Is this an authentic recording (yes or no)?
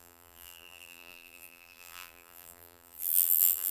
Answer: no